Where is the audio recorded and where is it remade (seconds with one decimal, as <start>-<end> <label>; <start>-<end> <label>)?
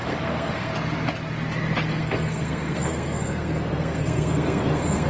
0.0-0.7 remade; 0.7-1.9 recorded; 1.9-5.1 remade